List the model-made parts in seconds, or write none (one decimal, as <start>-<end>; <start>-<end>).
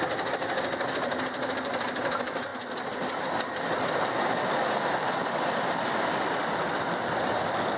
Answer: none